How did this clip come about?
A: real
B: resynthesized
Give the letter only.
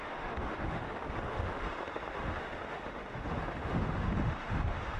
B